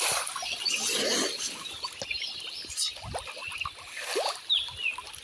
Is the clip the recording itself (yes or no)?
yes